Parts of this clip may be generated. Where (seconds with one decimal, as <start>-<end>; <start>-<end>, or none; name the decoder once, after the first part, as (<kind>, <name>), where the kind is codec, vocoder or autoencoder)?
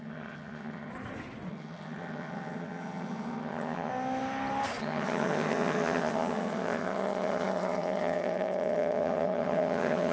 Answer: 0.0-0.9 (vocoder, HiFi-GAN); 1.5-3.9; 4.8-10.1